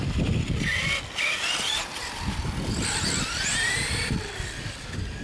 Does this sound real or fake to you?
real